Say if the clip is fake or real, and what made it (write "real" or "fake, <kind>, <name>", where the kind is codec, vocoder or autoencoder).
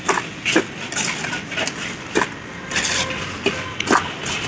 real